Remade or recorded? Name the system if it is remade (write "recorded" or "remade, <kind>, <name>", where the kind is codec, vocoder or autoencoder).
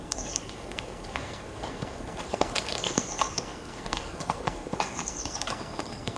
remade, codec, SNAC